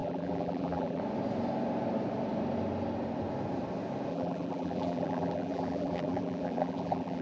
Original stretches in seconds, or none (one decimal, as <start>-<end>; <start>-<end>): 1.0-4.1